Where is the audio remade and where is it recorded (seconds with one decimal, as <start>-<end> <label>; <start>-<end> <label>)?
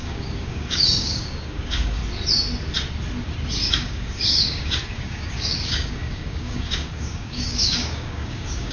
0.0-2.0 remade; 2.0-3.7 recorded; 3.7-8.7 remade